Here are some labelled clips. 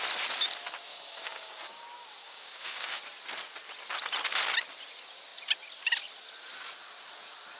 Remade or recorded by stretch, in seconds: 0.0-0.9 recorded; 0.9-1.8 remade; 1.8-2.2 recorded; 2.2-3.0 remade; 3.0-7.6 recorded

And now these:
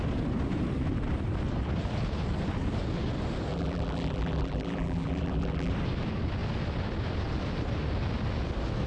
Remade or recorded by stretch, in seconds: 0.0-3.5 recorded; 3.5-5.7 remade; 5.7-8.9 recorded

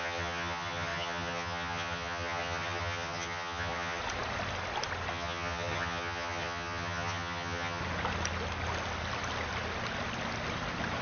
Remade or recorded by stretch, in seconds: 0.0-4.0 remade; 4.0-5.1 recorded; 5.1-7.8 remade; 7.8-11.0 recorded

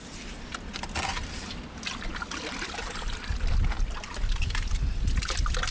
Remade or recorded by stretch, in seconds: 0.0-5.7 recorded

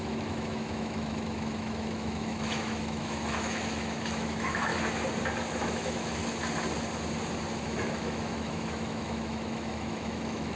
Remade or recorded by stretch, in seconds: 0.0-4.7 remade; 4.7-5.6 recorded; 5.6-6.2 remade; 6.2-7.6 recorded; 7.6-10.6 remade

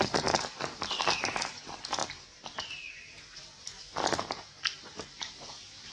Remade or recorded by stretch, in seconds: 0.0-5.9 remade

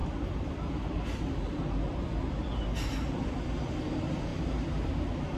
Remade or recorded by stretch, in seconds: 0.0-4.3 recorded; 4.3-4.9 remade; 4.9-5.4 recorded